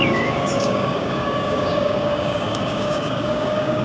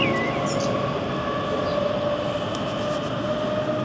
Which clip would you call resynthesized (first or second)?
first